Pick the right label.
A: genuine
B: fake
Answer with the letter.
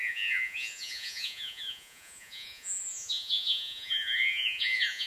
B